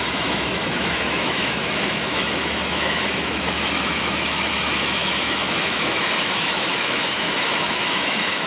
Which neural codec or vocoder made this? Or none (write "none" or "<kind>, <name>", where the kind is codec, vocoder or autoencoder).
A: autoencoder, DAC-VAE